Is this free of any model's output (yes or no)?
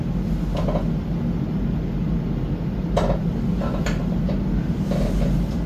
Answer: yes